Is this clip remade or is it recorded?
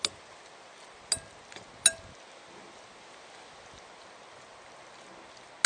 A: recorded